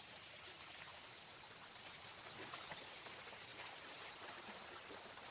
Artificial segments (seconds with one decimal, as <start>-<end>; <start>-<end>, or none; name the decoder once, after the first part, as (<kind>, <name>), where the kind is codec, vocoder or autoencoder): 0.0-0.9 (vocoder, BigVGAN v2); 2.3-5.3